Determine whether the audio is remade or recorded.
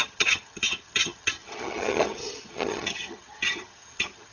remade